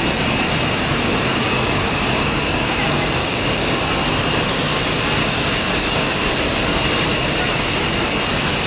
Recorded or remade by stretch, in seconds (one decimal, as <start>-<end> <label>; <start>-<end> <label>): 0.0-1.3 recorded; 1.3-2.7 remade; 2.7-3.2 recorded; 3.2-3.8 remade; 3.8-5.2 recorded; 5.2-6.3 remade; 6.3-8.7 recorded